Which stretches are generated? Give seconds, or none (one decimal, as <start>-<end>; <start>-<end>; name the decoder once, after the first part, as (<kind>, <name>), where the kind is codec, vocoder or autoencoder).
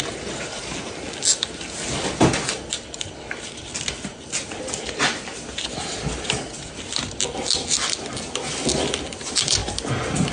none